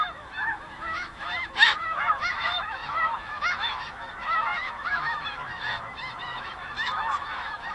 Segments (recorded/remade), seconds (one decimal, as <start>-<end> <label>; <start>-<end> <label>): 0.0-7.7 remade